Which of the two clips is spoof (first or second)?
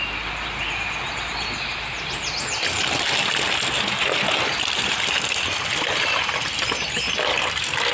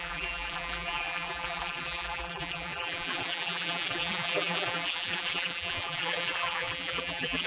second